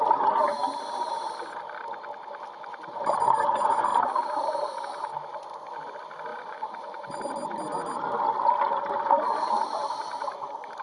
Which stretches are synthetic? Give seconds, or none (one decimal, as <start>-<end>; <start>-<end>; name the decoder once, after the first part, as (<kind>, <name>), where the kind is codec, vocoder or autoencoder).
6.3-7.2 (vocoder, Vocos)